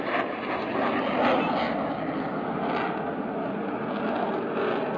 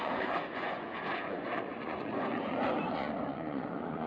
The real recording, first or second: first